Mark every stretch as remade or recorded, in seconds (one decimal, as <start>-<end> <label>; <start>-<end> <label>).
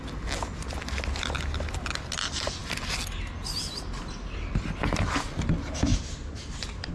0.0-6.9 recorded